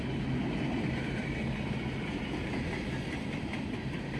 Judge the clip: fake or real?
real